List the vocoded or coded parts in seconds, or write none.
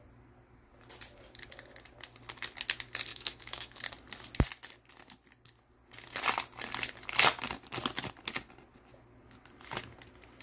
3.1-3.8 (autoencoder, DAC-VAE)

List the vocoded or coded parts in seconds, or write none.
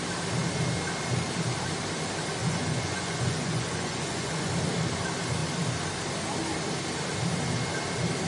2.4-4.5 (vocoder, Vocos)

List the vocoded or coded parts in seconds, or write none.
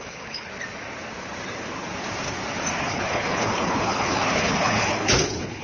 0.0-0.5 (codec, HILCodec); 2.8-5.6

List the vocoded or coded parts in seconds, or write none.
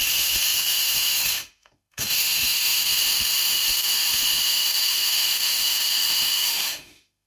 0.0-7.3 (autoencoder, DAC-VAE)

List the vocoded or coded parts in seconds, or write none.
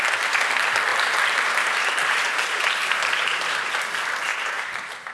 0.9-3.7 (vocoder, BigVGAN v2); 4.3-5.1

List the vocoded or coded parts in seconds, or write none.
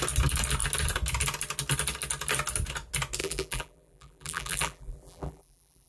3.2-5.9 (vocoder, BigVGAN v2)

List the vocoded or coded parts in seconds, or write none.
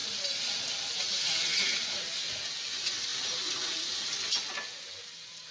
none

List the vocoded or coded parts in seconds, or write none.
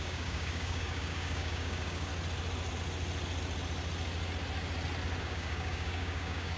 0.0-2.1 (codec, DAC); 5.2-6.6